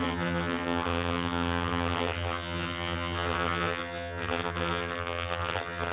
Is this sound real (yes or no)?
no